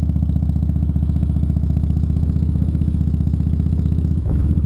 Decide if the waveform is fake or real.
fake